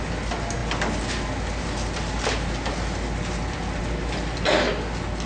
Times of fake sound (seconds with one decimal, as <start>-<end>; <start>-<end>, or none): none